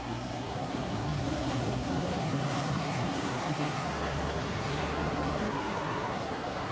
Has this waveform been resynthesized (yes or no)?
yes